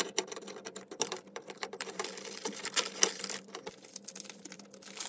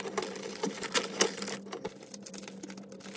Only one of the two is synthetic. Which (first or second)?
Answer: first